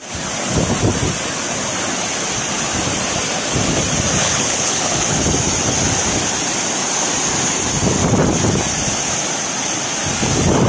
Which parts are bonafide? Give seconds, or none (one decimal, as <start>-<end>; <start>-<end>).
0.0-4.2; 5.2-10.7

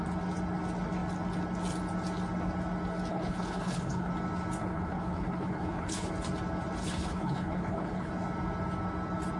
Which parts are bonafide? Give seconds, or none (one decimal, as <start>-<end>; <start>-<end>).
0.0-3.1; 4.1-4.6; 6.1-6.8; 8.1-9.4